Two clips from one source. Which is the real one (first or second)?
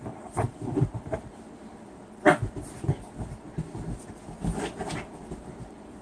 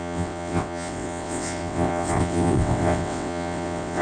first